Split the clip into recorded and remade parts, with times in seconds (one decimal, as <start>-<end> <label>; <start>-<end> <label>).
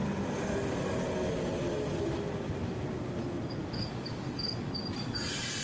0.0-3.6 recorded; 3.6-4.7 remade; 4.7-5.6 recorded